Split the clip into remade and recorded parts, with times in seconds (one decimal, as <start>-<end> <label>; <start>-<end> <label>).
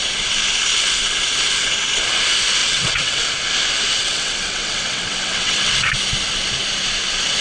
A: 0.0-2.6 recorded; 2.6-3.2 remade; 3.2-4.0 recorded; 4.0-5.7 remade; 5.7-7.4 recorded